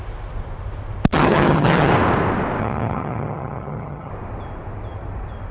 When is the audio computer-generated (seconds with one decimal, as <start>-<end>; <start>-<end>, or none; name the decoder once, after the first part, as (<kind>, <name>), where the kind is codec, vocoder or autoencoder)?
1.1-1.9 (vocoder, HiFi-GAN); 2.6-4.1